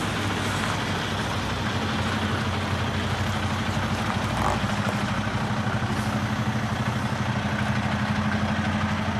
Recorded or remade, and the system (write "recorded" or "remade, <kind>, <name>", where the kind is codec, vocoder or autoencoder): recorded